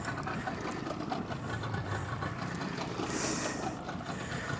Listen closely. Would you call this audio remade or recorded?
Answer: recorded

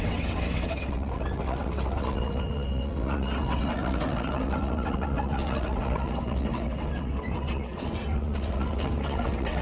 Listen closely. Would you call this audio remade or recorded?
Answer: remade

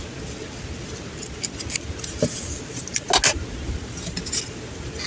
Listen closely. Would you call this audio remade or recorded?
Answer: recorded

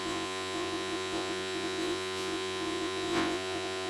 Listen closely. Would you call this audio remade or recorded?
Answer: remade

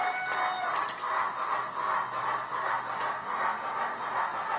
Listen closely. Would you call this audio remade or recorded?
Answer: recorded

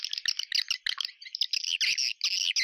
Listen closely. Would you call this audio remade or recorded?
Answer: recorded